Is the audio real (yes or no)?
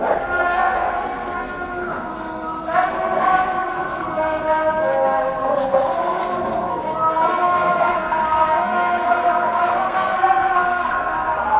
no